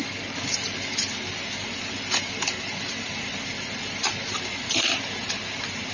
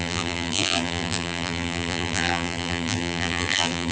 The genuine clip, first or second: first